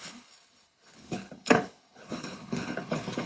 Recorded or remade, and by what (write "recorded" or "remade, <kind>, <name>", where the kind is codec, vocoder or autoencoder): remade, codec, HILCodec